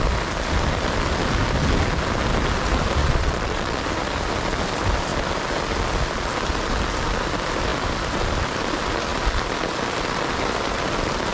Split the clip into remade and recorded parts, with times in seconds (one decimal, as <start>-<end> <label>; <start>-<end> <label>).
0.0-3.0 recorded; 3.0-3.8 remade; 3.8-11.3 recorded

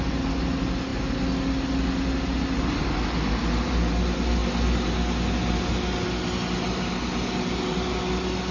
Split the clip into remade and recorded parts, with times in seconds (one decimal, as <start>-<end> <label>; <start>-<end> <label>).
0.0-8.5 recorded

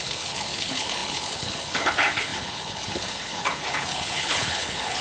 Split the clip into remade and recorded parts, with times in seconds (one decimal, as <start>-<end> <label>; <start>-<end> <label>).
0.0-5.0 remade

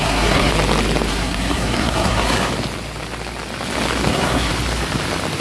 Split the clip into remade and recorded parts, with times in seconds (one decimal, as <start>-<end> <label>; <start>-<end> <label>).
0.0-0.5 remade; 0.5-1.1 recorded; 1.1-2.5 remade; 2.5-4.1 recorded; 4.1-4.5 remade; 4.5-5.4 recorded